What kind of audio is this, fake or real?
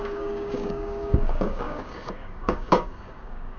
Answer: fake